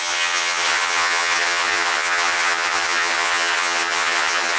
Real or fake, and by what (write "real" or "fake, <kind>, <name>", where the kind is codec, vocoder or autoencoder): fake, vocoder, HiFi-GAN